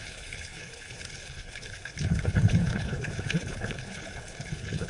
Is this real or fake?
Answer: fake